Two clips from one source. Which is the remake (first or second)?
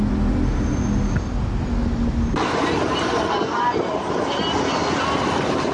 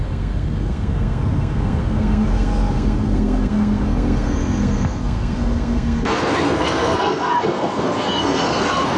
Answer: second